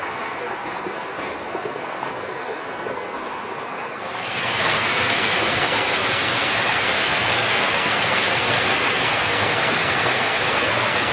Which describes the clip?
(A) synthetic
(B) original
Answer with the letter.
A